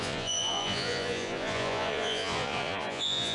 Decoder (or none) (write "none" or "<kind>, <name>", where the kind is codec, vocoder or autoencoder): vocoder, Vocos